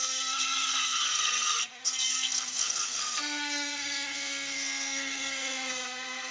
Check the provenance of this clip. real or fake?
fake